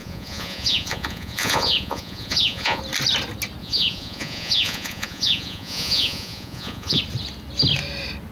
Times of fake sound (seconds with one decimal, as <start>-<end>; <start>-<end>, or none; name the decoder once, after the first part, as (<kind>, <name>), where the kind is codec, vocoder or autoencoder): 0.0-2.8 (vocoder, Vocos); 3.6-7.0